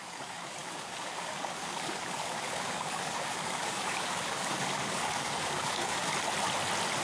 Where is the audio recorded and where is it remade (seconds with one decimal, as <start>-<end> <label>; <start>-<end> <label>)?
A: 0.0-6.1 remade; 6.1-7.0 recorded